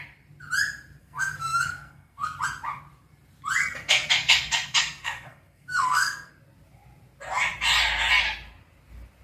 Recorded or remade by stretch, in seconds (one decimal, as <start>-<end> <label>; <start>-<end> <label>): 0.0-1.0 recorded; 1.0-2.4 remade; 2.4-3.6 recorded; 3.6-6.3 remade; 6.3-9.2 recorded